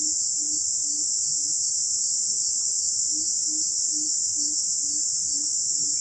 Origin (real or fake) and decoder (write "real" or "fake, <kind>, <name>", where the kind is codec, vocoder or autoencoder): real